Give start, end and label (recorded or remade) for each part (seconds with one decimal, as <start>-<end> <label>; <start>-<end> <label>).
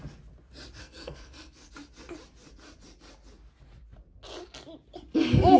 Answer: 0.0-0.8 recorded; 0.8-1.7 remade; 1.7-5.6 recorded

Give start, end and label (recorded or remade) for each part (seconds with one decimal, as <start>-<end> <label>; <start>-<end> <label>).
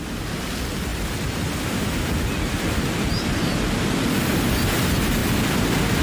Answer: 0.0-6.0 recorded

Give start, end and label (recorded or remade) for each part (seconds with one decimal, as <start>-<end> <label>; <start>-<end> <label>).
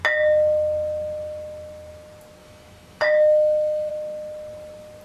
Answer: 0.0-2.4 recorded; 2.4-3.9 remade; 3.9-5.0 recorded